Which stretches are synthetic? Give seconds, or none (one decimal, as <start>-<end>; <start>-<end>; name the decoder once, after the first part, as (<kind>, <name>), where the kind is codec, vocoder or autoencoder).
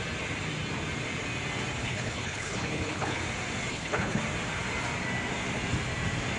1.8-3.2 (codec, HILCodec); 3.7-4.2